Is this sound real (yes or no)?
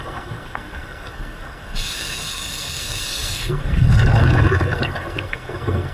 no